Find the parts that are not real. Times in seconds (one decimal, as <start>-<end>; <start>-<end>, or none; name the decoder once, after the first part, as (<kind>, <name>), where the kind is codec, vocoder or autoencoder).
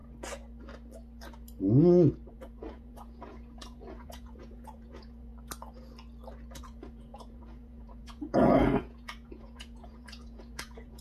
2.3-5.3 (vocoder, Vocos); 6.6-11.0